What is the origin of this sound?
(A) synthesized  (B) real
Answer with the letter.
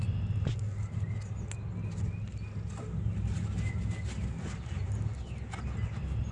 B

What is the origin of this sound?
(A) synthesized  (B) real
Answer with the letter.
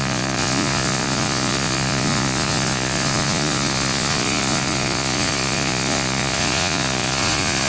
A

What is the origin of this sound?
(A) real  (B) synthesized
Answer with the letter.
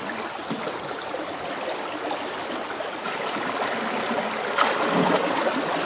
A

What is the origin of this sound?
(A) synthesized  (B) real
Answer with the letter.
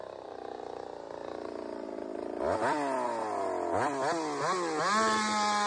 B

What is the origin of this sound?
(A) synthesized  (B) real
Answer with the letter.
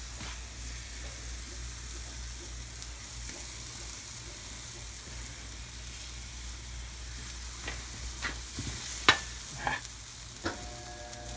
B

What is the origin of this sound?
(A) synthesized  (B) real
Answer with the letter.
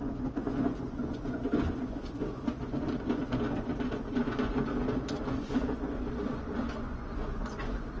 A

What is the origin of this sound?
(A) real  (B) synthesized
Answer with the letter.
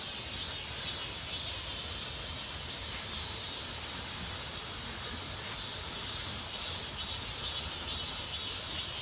A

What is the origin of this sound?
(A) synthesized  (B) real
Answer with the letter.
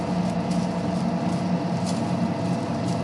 B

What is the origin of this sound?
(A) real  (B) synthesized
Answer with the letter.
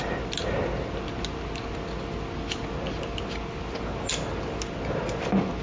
A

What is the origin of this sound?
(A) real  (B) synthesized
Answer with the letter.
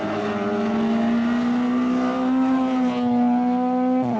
A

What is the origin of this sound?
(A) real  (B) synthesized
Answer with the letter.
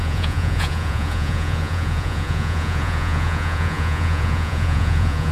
B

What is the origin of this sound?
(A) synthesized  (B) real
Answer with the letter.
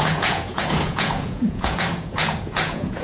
A